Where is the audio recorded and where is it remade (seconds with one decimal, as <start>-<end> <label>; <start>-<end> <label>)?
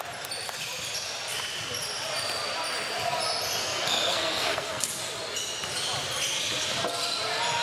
0.0-3.6 recorded; 3.6-5.0 remade; 5.0-7.6 recorded